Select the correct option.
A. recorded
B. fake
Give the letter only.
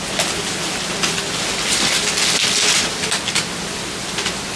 A